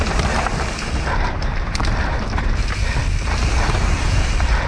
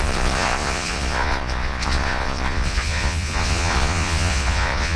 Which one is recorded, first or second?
first